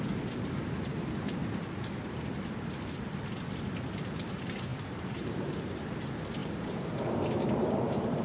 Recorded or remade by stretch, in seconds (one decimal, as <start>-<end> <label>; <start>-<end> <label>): 0.0-1.4 remade; 1.4-4.3 recorded; 4.3-8.2 remade

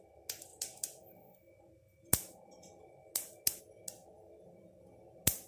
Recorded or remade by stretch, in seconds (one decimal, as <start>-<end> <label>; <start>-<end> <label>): 0.0-5.5 recorded

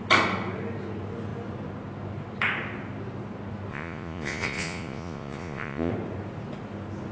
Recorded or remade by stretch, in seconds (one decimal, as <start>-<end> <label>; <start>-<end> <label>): 0.0-3.7 recorded; 3.7-5.9 remade; 5.9-7.1 recorded

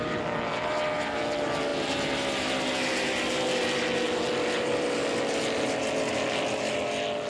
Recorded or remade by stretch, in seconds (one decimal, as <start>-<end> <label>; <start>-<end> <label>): 0.0-7.3 recorded

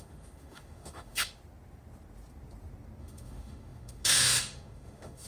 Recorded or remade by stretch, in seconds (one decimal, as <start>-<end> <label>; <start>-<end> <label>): 0.0-1.4 remade; 1.4-3.0 recorded; 3.0-5.3 remade

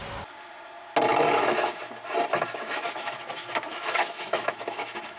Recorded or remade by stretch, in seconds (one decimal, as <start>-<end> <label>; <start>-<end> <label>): 0.0-1.1 recorded; 1.1-1.8 remade; 1.8-2.3 recorded; 2.3-5.2 remade